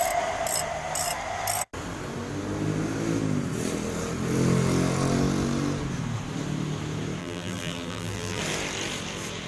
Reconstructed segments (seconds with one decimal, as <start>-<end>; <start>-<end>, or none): 7.2-8.4